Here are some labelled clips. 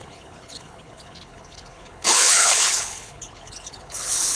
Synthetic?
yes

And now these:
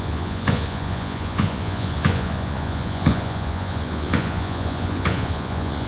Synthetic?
yes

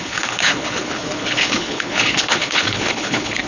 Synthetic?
yes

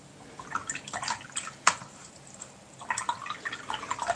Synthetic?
no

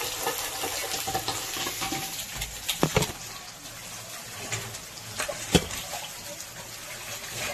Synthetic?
no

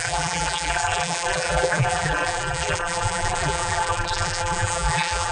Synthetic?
yes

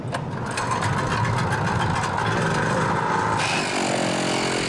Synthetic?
no